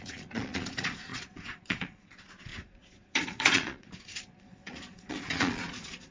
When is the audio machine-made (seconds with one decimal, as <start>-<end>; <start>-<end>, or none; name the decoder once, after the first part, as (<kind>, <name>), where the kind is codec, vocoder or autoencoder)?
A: 0.0-6.1 (vocoder, Vocos)